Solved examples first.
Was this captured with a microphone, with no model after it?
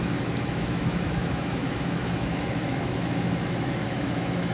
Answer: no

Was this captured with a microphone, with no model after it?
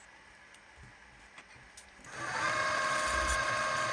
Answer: yes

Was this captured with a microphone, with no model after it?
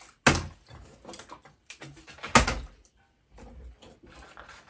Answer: yes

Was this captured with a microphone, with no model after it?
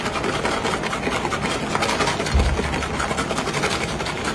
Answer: yes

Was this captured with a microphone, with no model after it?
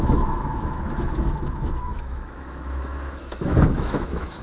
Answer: no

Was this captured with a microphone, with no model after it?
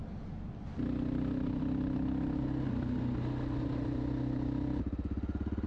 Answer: yes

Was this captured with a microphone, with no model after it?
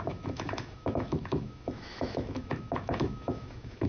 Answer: no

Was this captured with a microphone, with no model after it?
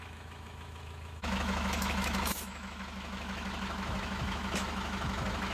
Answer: no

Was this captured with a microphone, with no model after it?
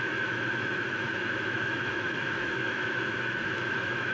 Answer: no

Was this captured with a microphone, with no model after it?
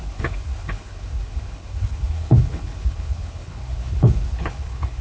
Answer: no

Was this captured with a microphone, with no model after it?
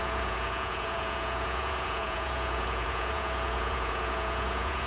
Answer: no